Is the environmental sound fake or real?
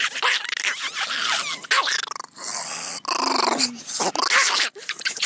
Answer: real